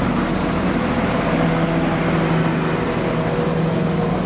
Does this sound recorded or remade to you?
recorded